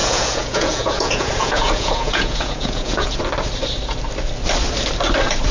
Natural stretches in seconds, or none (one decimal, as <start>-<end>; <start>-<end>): 3.2-5.5